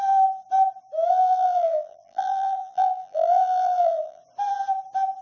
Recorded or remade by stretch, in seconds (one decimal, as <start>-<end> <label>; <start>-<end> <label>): 0.0-1.1 recorded; 1.1-4.2 remade; 4.2-5.2 recorded